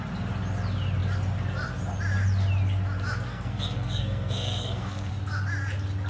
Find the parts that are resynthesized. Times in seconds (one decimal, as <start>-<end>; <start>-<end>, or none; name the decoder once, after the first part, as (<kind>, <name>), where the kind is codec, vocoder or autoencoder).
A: 3.3-5.1 (codec, SNAC)